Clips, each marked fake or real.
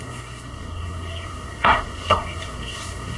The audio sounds fake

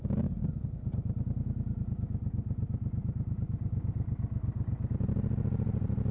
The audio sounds real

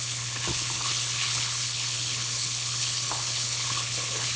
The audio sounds fake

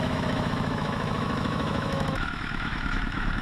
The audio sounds fake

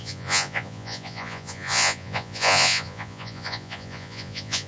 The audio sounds fake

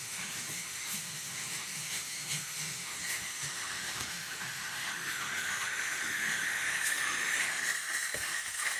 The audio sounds fake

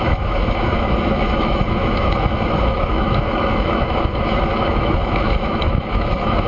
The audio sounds fake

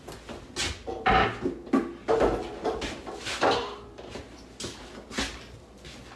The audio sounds real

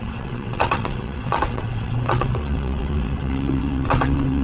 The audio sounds fake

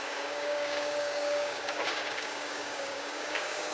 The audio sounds fake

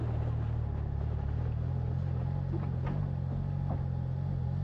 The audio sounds real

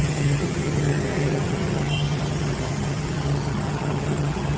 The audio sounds fake